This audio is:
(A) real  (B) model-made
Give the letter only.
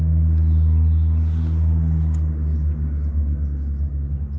A